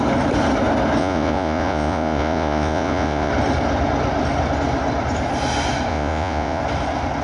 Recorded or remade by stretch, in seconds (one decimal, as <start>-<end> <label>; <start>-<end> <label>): 0.0-1.0 recorded; 1.0-3.3 remade; 3.3-5.9 recorded; 5.9-6.6 remade; 6.6-7.2 recorded